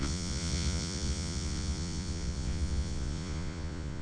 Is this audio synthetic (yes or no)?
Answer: yes